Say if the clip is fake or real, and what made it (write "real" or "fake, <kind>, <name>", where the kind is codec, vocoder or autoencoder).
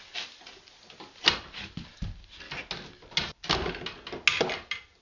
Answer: real